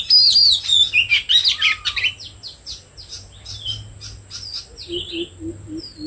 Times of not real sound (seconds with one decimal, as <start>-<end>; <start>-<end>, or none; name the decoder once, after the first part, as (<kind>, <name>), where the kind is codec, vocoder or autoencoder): none